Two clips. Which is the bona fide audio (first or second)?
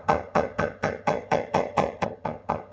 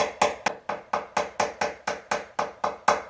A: second